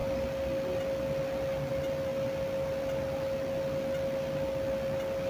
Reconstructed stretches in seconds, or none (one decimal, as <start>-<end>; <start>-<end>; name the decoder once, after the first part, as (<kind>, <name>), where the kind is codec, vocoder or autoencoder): none